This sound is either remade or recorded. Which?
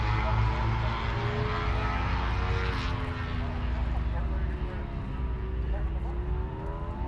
recorded